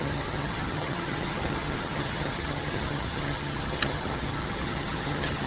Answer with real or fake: fake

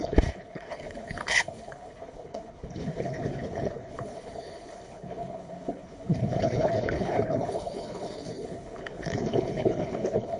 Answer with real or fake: fake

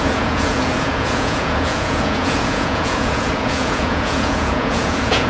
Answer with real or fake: fake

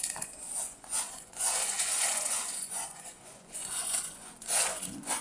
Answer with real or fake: fake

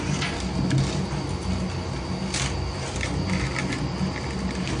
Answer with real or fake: real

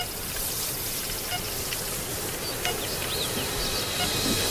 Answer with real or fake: real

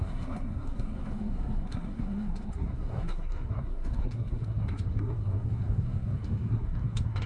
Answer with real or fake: fake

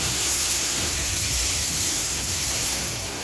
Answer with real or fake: fake